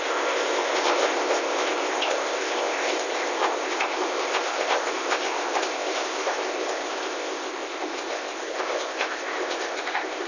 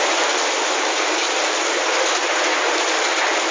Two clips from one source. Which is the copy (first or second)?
first